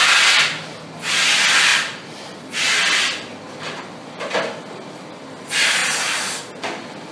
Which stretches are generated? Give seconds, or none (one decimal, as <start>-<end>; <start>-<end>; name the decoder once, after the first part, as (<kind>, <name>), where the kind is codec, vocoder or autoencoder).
none